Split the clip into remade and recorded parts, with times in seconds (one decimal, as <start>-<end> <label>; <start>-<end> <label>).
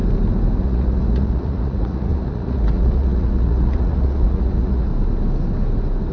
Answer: 0.0-0.6 recorded; 0.6-4.9 remade; 4.9-6.1 recorded